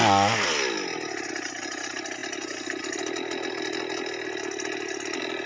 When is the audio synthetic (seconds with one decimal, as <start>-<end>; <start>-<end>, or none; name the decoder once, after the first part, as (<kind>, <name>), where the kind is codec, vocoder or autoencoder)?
none